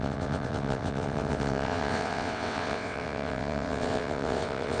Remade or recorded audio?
remade